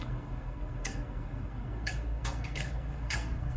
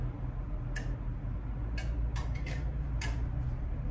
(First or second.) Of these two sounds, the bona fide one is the second